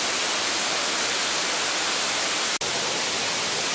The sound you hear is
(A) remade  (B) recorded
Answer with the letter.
B